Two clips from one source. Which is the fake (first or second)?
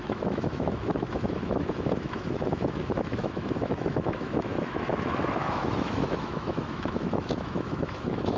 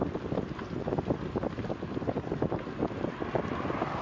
first